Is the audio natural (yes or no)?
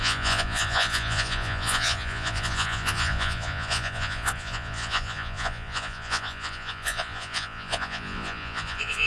no